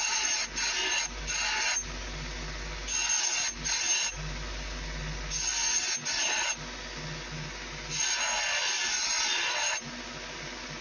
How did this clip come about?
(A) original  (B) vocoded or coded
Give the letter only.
A